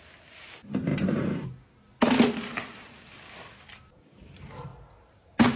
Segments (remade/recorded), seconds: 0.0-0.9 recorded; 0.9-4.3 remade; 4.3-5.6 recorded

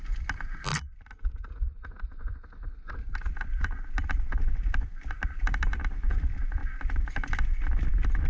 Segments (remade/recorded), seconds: 0.0-8.3 recorded

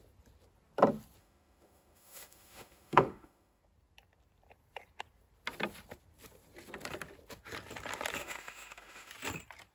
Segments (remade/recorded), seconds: 0.0-1.2 recorded; 1.2-3.6 remade; 3.6-8.2 recorded; 8.2-9.1 remade; 9.1-9.7 recorded

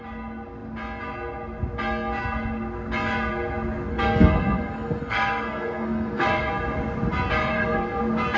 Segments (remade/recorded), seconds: 0.0-3.9 recorded; 3.9-6.5 remade; 6.5-7.5 recorded; 7.5-8.0 remade; 8.0-8.4 recorded

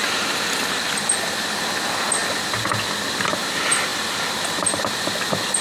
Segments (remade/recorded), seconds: 0.0-5.6 recorded

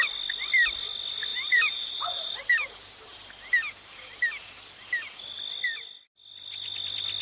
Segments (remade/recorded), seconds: 0.0-1.3 recorded; 1.3-3.5 remade; 3.5-7.2 recorded

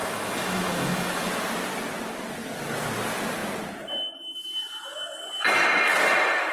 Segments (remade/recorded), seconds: 0.0-1.3 remade; 1.3-6.5 recorded